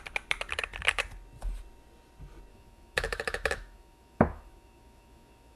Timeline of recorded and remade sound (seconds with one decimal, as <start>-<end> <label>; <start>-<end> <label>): 0.0-2.5 recorded; 2.5-5.6 remade